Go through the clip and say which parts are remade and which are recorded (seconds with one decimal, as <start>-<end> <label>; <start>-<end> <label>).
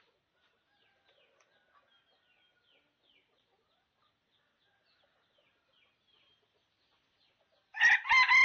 0.0-8.4 recorded